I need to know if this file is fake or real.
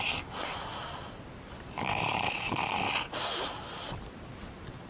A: real